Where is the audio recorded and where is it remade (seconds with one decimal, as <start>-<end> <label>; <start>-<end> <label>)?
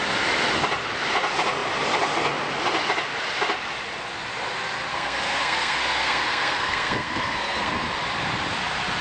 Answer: 0.0-4.9 recorded; 4.9-7.7 remade; 7.7-9.0 recorded